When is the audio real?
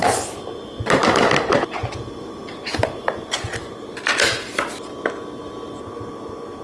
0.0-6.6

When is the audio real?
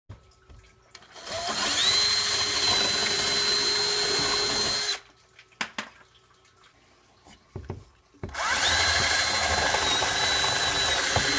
0.0-11.4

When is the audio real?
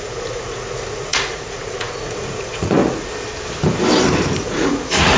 2.8-4.4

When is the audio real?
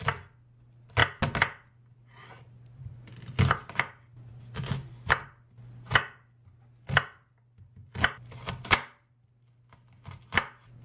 0.0-10.8